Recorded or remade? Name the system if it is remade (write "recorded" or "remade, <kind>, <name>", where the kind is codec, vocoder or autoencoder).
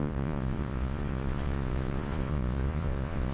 remade, vocoder, Vocos